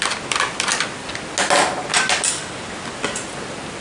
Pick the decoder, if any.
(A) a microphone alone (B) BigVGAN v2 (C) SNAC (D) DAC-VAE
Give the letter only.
A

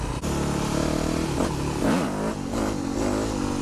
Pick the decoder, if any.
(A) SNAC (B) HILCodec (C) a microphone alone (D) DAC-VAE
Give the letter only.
C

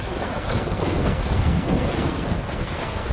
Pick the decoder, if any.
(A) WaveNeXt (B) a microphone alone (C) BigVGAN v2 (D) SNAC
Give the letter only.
D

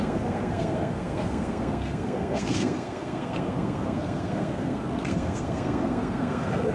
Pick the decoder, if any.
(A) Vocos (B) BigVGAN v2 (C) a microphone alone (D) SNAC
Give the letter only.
D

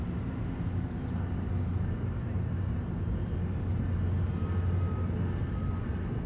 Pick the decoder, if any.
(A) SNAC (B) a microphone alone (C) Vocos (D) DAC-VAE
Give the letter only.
B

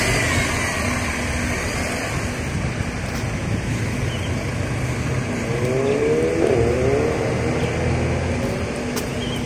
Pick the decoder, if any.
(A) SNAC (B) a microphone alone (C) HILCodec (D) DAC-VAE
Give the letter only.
B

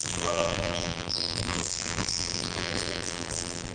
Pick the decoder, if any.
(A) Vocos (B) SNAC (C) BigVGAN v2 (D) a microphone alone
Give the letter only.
C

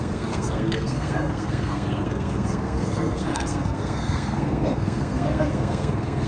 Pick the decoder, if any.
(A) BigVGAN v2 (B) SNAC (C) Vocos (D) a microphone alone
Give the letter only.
B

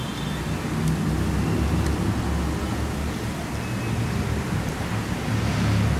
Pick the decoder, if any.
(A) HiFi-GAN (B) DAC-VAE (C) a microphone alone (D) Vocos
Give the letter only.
C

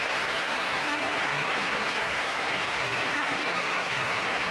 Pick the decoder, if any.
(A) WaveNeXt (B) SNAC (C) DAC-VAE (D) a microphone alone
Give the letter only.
B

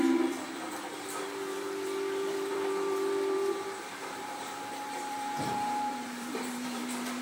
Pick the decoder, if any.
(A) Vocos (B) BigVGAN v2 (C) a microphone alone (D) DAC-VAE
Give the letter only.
B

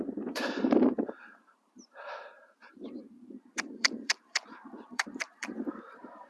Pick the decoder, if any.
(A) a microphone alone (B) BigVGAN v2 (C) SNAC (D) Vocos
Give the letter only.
B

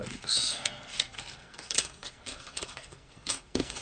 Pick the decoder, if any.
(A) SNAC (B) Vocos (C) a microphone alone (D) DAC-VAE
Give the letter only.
A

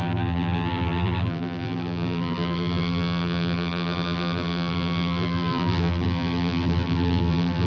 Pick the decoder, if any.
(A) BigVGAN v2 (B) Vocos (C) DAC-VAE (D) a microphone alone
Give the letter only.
A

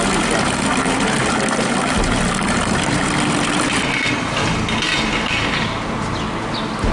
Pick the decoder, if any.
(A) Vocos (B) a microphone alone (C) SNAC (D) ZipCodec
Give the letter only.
B